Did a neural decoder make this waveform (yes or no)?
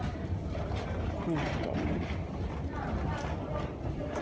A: no